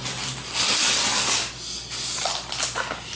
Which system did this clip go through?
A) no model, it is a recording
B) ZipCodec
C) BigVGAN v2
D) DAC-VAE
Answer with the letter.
A